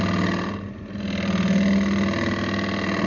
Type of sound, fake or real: real